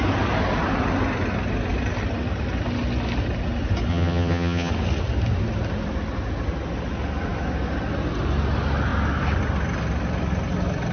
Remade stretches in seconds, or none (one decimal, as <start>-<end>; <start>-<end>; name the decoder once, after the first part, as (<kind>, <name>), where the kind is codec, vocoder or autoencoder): 3.9-4.7 (vocoder, HiFi-GAN)